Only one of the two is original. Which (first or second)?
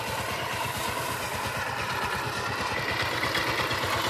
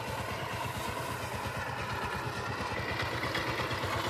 second